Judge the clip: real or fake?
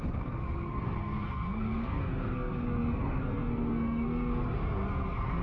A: fake